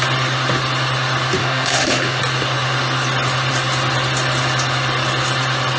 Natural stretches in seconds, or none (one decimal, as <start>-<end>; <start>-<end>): 0.0-1.4; 2.2-5.8